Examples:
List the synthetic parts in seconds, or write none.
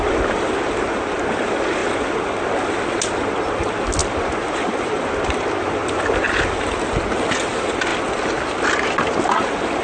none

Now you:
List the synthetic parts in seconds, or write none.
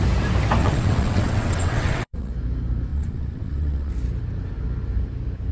0.6-2.3 (vocoder, WaveNeXt); 2.9-3.9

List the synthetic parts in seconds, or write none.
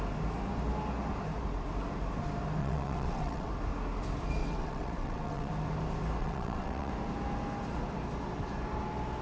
2.6-3.5 (vocoder, WaveNeXt); 4.4-5.5; 6.2-6.9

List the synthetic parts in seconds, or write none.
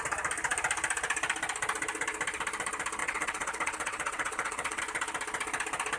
3.0-4.8 (vocoder, WaveNeXt)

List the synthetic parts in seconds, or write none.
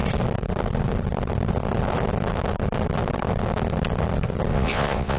4.5-5.2 (vocoder, WaveNeXt)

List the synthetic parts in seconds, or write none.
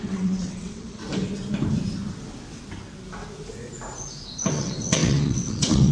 0.0-1.0 (vocoder, WaveNeXt); 4.5-5.9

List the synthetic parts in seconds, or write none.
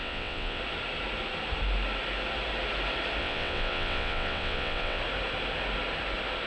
0.0-0.6 (vocoder, WaveNeXt); 3.2-5.0